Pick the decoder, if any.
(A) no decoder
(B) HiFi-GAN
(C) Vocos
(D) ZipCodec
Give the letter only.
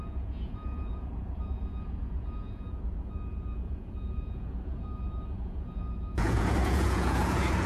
C